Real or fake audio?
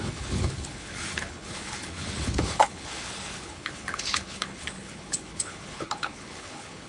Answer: fake